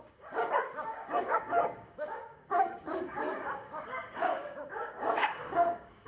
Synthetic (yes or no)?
yes